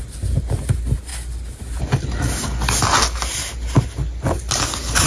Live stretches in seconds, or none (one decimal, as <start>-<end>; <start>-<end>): 0.0-5.1